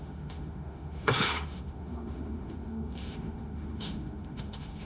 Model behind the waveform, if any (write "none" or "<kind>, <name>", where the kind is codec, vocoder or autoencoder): autoencoder, DAC-VAE